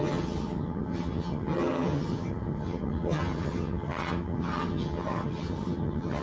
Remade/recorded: remade